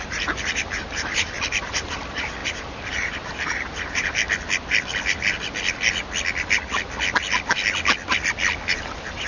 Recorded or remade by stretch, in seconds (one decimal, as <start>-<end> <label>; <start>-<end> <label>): 0.0-4.2 remade; 4.2-8.7 recorded; 8.7-9.3 remade